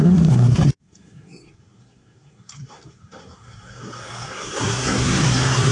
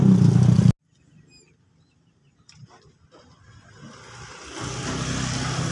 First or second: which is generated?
first